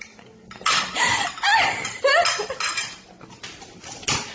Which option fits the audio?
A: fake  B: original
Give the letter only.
B